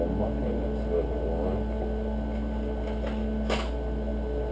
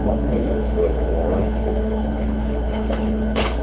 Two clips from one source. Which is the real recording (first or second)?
first